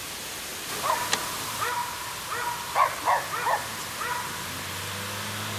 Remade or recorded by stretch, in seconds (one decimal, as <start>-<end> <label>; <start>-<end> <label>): 0.0-5.6 recorded